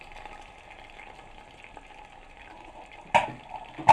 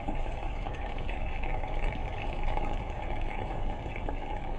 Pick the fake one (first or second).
second